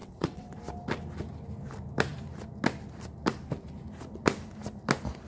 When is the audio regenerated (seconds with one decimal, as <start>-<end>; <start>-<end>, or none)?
0.0-0.6